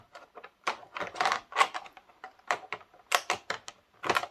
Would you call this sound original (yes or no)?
yes